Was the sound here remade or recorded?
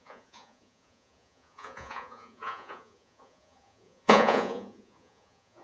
remade